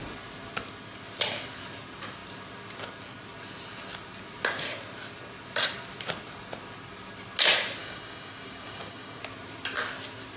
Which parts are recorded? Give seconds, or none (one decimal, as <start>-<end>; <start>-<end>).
0.0-7.8; 9.2-10.4